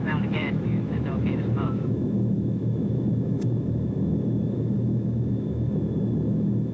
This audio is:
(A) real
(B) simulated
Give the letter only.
B